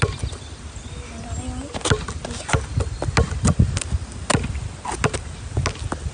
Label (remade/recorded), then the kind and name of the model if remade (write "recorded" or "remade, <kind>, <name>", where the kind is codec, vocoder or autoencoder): recorded